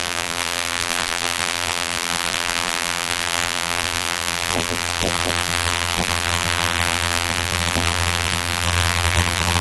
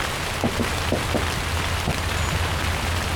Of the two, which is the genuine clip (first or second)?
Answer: second